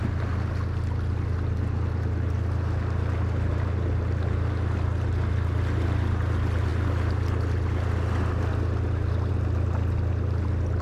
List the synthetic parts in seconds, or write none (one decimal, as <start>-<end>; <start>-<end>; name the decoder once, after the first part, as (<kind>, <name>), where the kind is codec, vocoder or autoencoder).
none